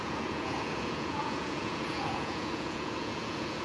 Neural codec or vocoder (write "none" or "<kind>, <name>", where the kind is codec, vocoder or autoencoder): vocoder, Vocos